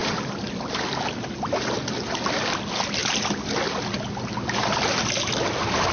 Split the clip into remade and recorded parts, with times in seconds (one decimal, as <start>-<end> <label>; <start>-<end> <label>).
0.0-5.9 recorded